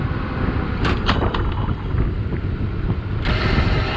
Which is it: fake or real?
real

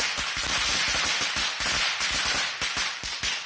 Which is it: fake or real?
real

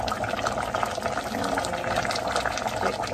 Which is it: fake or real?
real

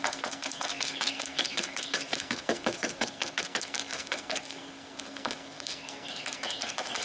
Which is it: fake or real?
fake